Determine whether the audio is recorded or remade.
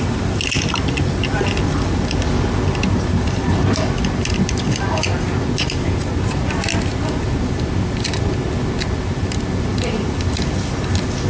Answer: recorded